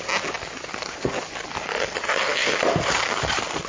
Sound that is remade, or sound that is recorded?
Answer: recorded